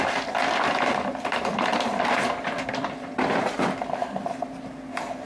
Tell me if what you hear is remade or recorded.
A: recorded